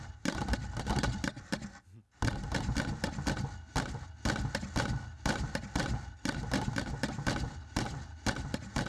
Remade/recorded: recorded